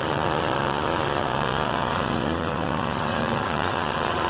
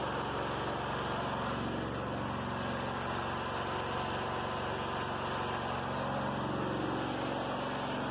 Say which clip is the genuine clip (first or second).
second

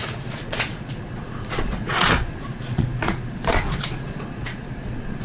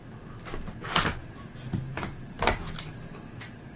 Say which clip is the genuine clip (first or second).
second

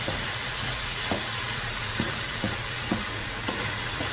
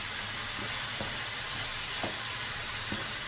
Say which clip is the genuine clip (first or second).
second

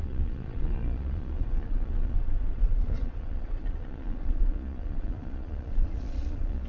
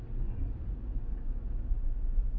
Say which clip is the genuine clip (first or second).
second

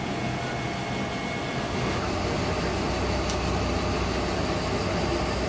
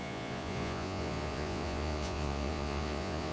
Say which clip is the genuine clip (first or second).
first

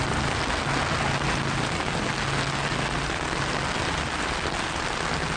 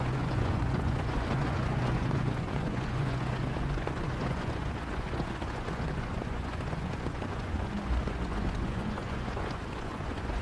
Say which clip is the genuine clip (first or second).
first